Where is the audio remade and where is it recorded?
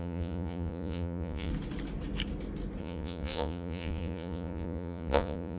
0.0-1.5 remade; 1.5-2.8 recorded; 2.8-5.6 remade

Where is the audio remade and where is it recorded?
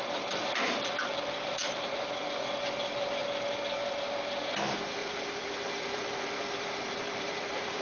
0.0-0.4 recorded; 0.4-1.8 remade; 1.8-5.0 recorded; 5.0-7.8 remade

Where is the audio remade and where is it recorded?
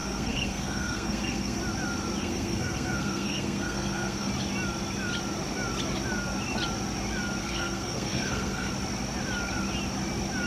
0.0-1.6 remade; 1.6-2.2 recorded; 2.2-4.3 remade; 4.3-7.4 recorded; 7.4-8.7 remade; 8.7-10.5 recorded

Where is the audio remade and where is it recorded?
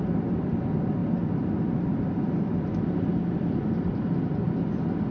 0.0-5.1 recorded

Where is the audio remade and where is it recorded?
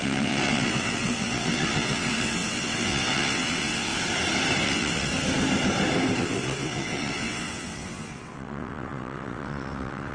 0.0-3.9 remade; 3.9-4.6 recorded; 4.6-5.1 remade; 5.1-6.2 recorded; 6.2-10.1 remade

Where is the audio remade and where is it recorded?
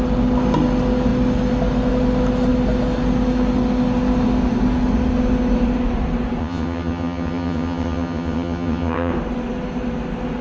0.0-6.4 recorded; 6.4-9.1 remade; 9.1-10.4 recorded